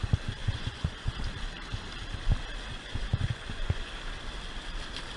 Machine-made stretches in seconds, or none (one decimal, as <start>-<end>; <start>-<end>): 0.4-1.2; 2.7-3.9